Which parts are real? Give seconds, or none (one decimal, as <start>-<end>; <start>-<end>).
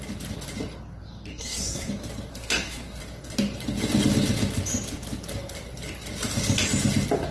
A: 0.0-1.3; 1.9-2.3; 3.0-7.3